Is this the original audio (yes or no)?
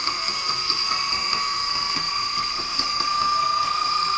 no